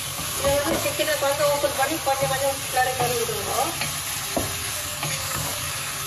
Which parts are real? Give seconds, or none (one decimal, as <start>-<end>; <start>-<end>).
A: 1.1-4.6